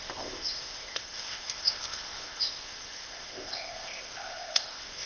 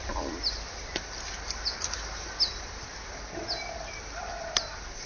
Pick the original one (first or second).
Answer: second